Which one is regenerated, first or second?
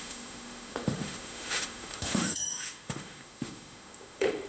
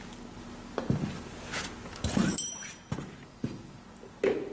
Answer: first